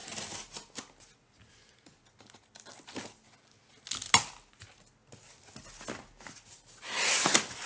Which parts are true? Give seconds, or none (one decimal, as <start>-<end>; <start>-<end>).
0.0-7.7

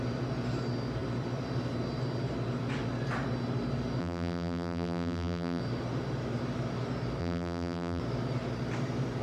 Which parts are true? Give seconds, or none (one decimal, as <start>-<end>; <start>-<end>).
0.0-4.0; 5.6-7.2; 8.0-9.2

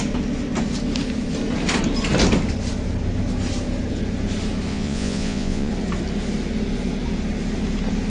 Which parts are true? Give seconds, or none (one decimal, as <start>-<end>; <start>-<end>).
0.0-4.7; 5.7-8.1

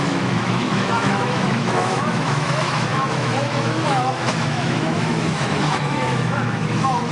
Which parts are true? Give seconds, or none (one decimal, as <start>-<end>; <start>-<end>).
none